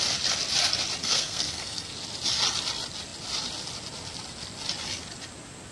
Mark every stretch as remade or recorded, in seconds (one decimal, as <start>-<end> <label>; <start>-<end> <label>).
0.0-1.0 recorded; 1.0-1.9 remade; 1.9-5.7 recorded